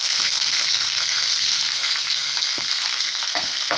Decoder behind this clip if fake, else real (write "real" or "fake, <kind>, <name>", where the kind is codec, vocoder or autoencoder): fake, codec, SNAC